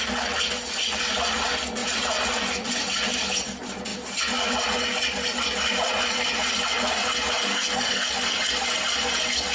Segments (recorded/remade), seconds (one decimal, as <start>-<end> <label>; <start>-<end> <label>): 0.0-7.5 recorded; 7.5-8.1 remade; 8.1-9.5 recorded